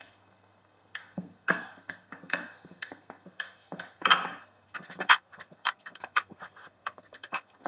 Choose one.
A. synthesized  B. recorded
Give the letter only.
A